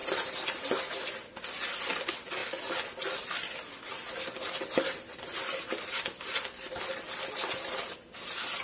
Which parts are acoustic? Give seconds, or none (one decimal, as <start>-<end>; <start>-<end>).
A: 0.0-8.6